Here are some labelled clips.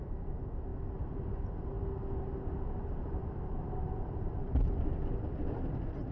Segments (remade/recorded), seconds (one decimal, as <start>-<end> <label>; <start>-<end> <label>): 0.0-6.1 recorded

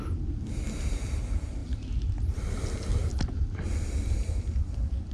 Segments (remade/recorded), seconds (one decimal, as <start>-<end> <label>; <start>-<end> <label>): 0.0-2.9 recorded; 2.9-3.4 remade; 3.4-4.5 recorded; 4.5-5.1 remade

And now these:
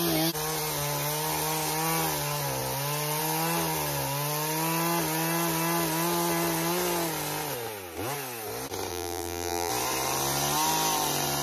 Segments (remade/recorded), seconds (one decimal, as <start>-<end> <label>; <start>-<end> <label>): 0.0-8.9 recorded; 8.9-9.7 remade; 9.7-11.4 recorded

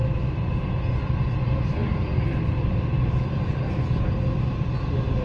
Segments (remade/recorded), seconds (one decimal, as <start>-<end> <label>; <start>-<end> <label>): 0.0-0.6 remade; 0.6-1.8 recorded; 1.8-4.0 remade; 4.0-5.2 recorded

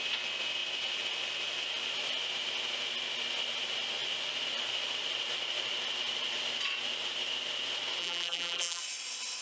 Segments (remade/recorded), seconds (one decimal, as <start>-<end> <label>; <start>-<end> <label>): 0.0-8.0 recorded; 8.0-8.8 remade; 8.8-9.4 recorded